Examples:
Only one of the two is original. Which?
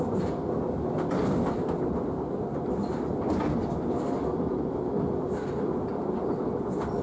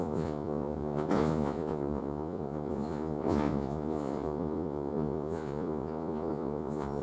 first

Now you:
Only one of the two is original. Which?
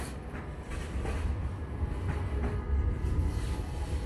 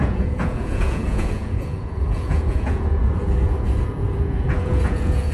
first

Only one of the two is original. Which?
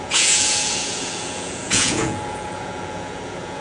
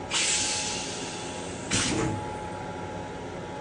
second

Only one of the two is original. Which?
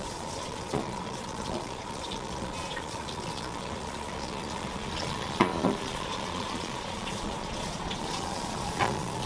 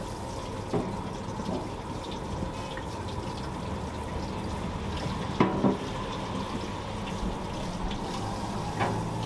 second